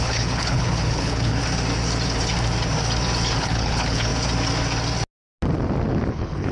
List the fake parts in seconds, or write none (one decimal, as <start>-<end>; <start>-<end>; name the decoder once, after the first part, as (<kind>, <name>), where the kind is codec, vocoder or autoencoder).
0.0-1.4 (codec, HILCodec); 3.4-4.1; 6.1-6.5